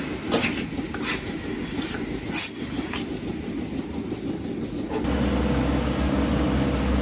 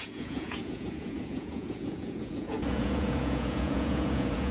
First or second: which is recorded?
first